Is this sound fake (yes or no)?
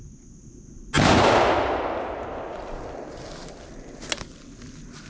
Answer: no